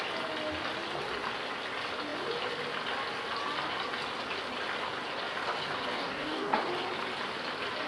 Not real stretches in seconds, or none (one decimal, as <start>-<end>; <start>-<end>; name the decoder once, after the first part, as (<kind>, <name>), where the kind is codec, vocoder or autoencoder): 5.9-6.6 (codec, DAC)

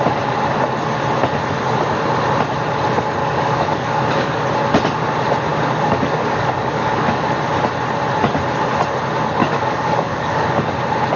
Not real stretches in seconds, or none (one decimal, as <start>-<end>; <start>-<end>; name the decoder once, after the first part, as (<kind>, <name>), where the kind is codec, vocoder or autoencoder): 3.2-4.4 (codec, DAC); 5.5-7.2; 9.4-10.7

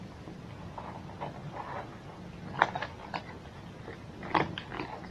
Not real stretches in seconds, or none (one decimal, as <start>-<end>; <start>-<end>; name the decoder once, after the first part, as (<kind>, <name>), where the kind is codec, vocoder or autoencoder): none

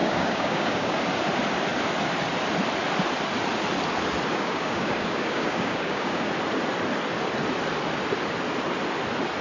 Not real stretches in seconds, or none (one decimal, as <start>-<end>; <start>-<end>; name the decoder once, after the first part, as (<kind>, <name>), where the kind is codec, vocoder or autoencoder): 0.0-1.0 (codec, DAC); 4.3-6.3

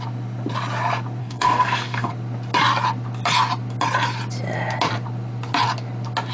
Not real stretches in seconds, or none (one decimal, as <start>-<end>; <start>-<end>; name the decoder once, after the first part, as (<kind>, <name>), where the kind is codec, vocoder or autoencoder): 1.2-2.1 (codec, DAC)

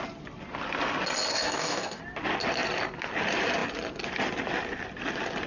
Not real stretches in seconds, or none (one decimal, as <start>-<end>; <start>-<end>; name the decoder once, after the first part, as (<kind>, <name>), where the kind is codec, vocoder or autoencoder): 1.3-2.0 (codec, DAC)